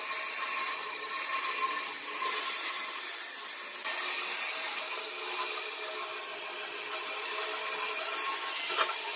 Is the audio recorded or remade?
recorded